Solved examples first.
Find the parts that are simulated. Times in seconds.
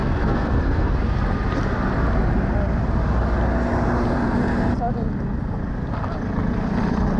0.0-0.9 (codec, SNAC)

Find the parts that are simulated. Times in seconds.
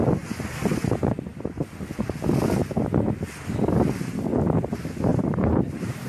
5.1-6.1 (vocoder, BigVGAN v2)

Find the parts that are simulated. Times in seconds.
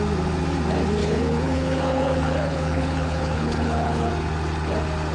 1.0-4.1 (codec, HILCodec)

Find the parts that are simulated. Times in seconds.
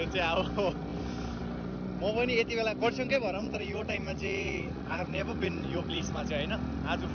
3.4-6.2 (vocoder, Vocos)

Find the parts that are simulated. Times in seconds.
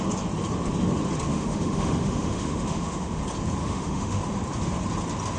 1.3-3.2 (autoencoder, DAC-VAE); 3.6-4.2